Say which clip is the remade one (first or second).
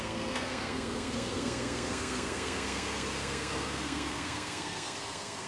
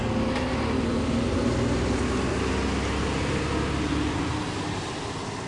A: first